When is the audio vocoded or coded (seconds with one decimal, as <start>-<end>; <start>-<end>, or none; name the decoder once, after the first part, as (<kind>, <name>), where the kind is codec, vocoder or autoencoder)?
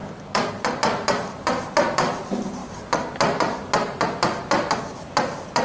none